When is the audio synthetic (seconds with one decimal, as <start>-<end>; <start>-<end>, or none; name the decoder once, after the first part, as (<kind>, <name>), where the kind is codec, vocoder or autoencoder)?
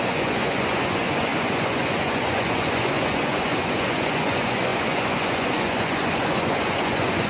0.0-7.3 (vocoder, Vocos)